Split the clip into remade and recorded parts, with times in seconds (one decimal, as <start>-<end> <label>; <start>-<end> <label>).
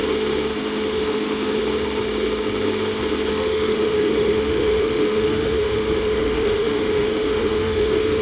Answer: 0.0-0.5 recorded; 0.5-1.6 remade; 1.6-3.3 recorded; 3.3-8.2 remade